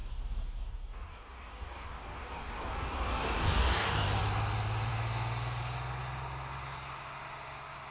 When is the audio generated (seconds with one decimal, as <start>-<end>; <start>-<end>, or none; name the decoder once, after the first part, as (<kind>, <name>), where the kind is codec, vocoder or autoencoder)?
0.0-4.2 (codec, DAC)